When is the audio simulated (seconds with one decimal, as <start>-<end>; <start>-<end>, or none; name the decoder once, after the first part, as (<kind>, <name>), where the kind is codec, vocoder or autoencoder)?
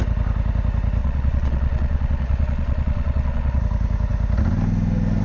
1.0-3.6 (vocoder, Vocos)